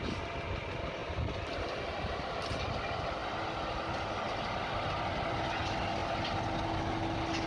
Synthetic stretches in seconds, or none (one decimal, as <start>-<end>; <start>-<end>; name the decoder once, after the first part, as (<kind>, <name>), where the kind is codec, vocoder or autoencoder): none